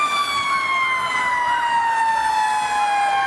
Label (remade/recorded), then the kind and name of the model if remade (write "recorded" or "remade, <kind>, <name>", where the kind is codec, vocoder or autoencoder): recorded